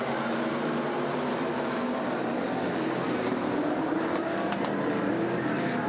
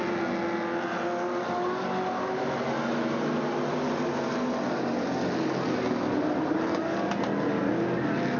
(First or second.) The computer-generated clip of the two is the first